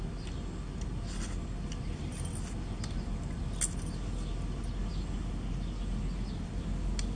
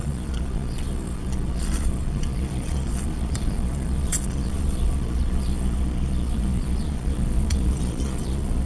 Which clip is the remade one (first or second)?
second